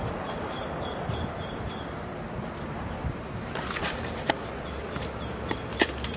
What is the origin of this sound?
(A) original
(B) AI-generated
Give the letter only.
B